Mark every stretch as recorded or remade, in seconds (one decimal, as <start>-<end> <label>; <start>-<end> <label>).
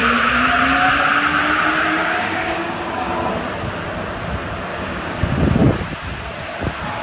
0.0-2.0 recorded; 2.0-3.2 remade; 3.2-4.7 recorded; 4.7-5.3 remade; 5.3-7.0 recorded